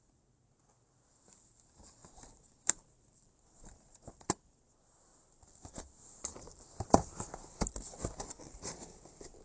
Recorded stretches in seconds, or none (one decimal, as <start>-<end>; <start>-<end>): 0.0-2.0; 4.6-5.1; 5.7-6.3